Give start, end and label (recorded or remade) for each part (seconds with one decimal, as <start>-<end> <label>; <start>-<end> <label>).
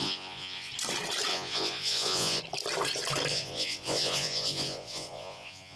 0.0-0.7 remade; 0.7-1.3 recorded; 1.3-2.4 remade; 2.4-3.3 recorded; 3.3-5.8 remade